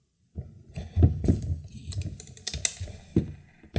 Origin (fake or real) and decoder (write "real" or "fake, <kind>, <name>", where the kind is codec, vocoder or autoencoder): real